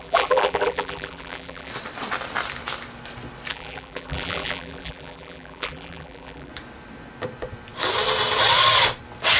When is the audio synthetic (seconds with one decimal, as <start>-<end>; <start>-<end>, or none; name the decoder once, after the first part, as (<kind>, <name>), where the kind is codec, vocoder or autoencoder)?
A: 0.0-1.7 (vocoder, BigVGAN v2); 3.5-6.5